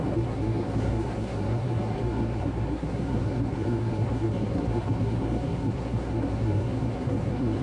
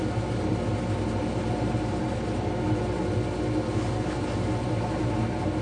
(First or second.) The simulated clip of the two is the first